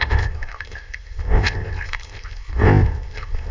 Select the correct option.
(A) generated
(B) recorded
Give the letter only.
A